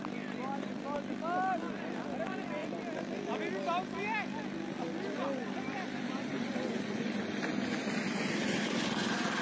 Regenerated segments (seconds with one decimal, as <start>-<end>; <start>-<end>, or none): none